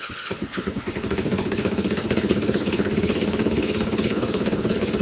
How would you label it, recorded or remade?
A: remade